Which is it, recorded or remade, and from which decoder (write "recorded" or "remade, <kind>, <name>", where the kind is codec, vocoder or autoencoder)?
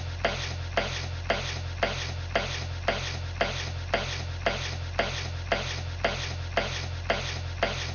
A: recorded